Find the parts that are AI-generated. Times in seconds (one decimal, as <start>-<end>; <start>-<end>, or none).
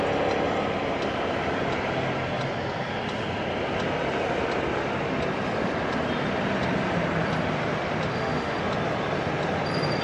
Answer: 8.1-8.6